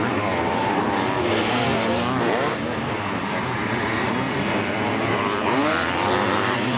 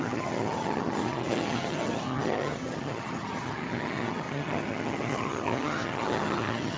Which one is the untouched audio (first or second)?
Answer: first